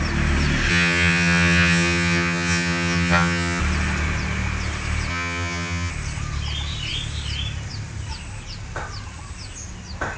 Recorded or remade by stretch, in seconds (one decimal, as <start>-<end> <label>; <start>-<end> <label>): 0.0-0.7 recorded; 0.7-3.6 remade; 3.6-5.1 recorded; 5.1-5.9 remade; 5.9-10.2 recorded